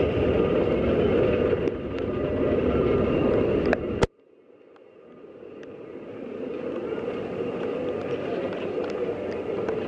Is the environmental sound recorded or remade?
recorded